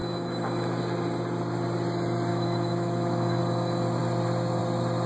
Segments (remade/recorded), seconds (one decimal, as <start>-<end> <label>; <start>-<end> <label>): 0.0-0.8 remade; 0.8-2.3 recorded; 2.3-3.4 remade; 3.4-5.1 recorded